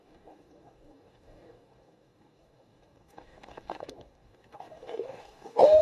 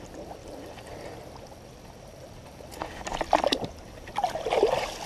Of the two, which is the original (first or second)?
second